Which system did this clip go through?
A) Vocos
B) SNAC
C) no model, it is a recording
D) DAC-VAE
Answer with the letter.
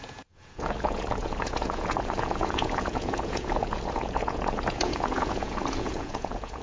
A